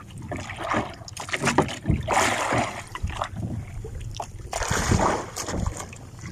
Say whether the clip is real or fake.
real